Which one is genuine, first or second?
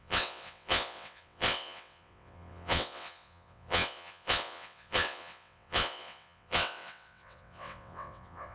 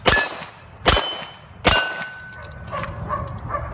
second